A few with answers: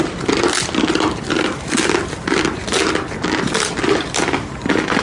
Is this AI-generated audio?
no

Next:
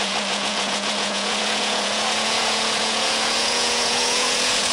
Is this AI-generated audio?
yes